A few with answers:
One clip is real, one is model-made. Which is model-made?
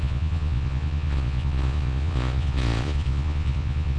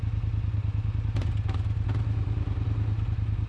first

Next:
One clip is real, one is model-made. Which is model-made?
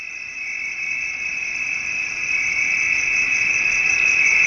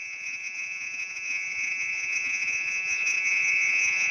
second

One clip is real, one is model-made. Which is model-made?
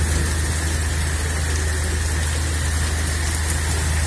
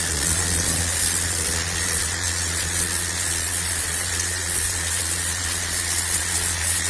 second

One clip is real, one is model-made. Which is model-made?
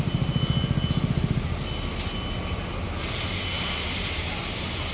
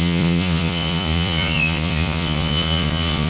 second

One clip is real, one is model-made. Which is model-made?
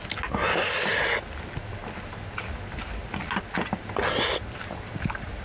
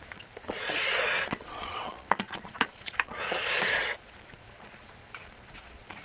second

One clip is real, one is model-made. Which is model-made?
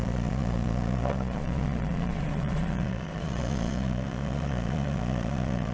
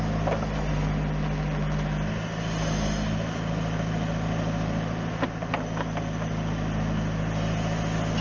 first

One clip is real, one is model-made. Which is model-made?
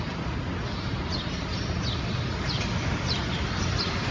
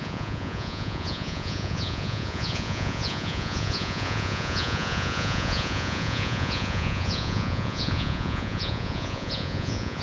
second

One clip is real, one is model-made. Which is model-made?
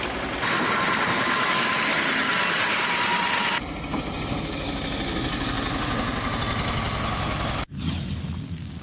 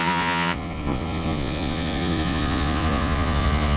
second